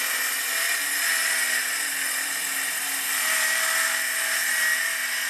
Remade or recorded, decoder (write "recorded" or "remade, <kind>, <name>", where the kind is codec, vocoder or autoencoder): recorded